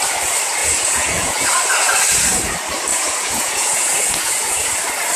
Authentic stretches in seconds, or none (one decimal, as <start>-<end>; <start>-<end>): 0.0-0.6; 1.5-2.9; 4.7-5.2